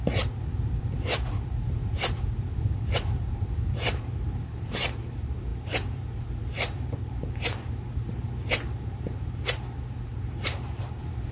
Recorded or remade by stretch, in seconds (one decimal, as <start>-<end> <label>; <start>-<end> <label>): 0.0-11.3 remade